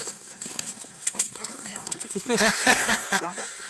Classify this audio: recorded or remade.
remade